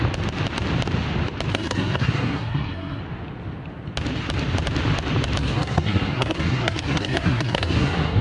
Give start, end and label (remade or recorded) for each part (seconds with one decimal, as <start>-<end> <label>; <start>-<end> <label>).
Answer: 0.0-1.5 recorded; 1.5-3.0 remade; 3.0-5.4 recorded; 5.4-8.2 remade